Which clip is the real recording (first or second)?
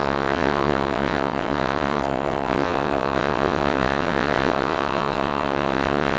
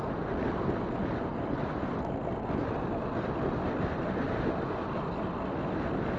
second